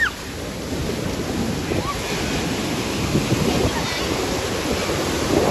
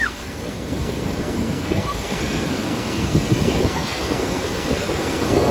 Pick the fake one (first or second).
second